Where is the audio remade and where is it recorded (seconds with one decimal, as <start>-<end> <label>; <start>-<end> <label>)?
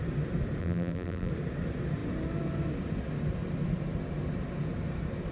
0.0-0.6 recorded; 0.6-1.3 remade; 1.3-5.3 recorded